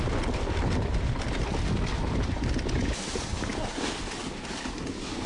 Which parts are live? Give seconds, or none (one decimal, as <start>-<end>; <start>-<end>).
0.0-5.3